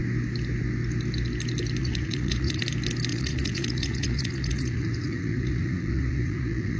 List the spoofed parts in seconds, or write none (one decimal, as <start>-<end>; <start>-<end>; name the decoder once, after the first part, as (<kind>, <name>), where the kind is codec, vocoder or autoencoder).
1.8-2.6 (vocoder, Vocos); 3.1-6.8